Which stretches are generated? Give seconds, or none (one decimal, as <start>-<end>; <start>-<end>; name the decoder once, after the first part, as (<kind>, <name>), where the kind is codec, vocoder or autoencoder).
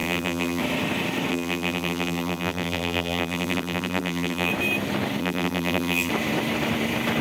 0.0-0.6 (vocoder, BigVGAN v2); 1.3-4.5; 5.2-6.1